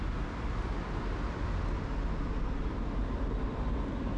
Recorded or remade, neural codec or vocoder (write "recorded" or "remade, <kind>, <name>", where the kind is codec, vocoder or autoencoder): recorded